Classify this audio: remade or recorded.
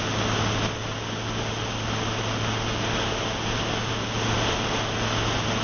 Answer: recorded